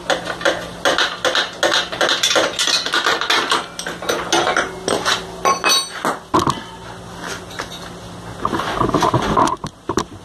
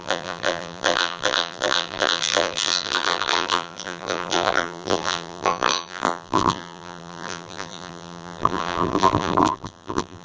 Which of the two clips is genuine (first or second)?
first